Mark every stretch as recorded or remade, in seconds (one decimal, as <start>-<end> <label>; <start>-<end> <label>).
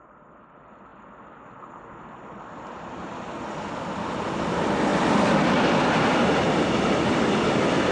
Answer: 0.0-7.9 recorded